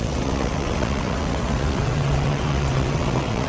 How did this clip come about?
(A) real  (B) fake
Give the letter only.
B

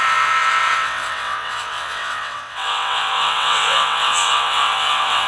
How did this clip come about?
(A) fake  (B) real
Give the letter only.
A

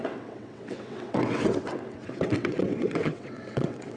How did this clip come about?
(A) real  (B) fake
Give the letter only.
B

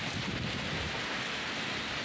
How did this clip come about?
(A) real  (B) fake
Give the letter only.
A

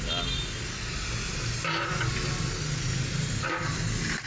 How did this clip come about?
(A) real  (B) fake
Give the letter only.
A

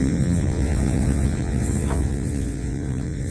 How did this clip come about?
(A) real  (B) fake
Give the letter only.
B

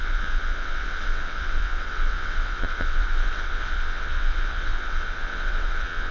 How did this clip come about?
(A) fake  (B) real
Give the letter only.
A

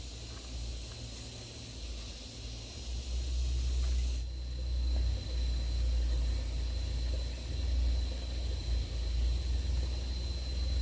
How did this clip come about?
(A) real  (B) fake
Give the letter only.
A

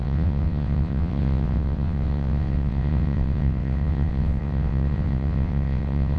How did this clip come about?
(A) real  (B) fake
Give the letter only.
B